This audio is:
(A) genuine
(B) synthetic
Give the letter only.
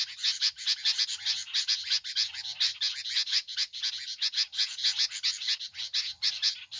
A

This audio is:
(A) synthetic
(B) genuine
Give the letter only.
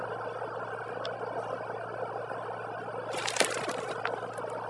B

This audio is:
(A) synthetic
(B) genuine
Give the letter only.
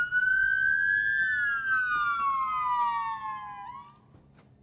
B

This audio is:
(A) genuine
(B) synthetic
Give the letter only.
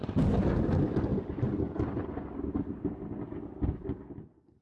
A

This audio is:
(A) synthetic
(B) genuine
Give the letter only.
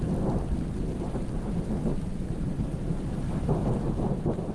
B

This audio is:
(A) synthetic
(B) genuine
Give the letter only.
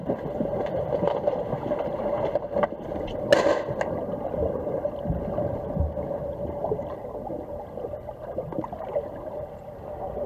B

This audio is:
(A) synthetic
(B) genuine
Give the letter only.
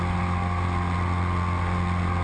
B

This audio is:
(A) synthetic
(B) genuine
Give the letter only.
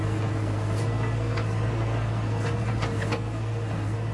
A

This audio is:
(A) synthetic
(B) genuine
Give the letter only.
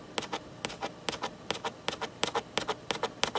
B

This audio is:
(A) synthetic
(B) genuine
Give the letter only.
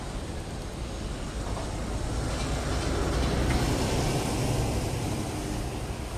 B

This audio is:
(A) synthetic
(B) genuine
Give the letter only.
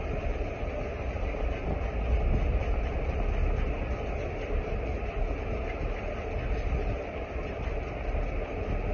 B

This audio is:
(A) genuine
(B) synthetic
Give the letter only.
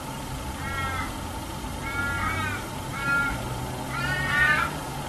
A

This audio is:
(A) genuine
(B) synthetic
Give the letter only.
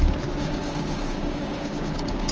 B